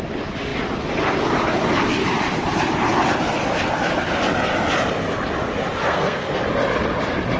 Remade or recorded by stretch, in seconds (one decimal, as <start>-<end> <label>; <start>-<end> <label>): 0.0-5.8 recorded; 5.8-6.4 remade; 6.4-7.4 recorded